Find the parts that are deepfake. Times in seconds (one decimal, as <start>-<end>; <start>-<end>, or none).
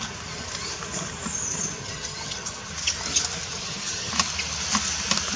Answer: 1.8-2.7; 3.5-4.1